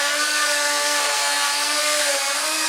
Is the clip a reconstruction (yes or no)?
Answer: yes